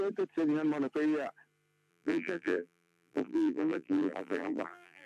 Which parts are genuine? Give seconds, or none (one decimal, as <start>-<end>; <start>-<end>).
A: 0.0-1.9